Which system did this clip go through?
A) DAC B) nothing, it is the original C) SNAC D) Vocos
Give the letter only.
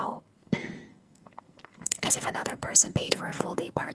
C